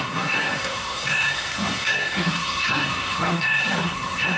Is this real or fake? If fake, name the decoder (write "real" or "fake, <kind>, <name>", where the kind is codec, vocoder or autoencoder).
fake, codec, SNAC